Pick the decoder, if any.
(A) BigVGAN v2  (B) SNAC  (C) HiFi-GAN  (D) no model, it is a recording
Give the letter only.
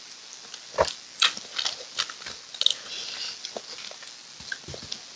D